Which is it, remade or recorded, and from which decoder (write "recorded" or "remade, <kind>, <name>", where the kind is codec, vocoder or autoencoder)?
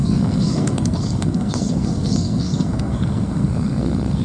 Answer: remade, codec, SNAC